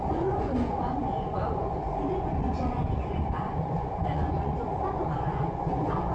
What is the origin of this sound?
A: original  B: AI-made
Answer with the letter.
B